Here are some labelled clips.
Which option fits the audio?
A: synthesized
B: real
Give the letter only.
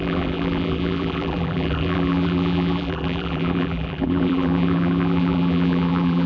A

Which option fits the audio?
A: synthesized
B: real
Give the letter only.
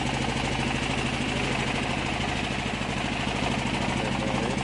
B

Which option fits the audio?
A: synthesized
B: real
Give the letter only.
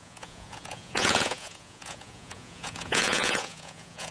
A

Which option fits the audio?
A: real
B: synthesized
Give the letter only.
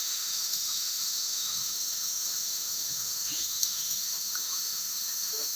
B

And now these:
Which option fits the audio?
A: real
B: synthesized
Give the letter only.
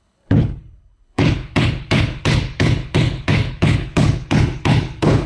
B